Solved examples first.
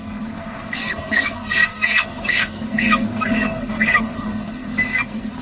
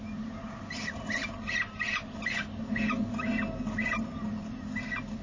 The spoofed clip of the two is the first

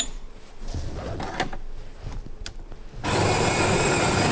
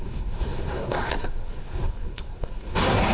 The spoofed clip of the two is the second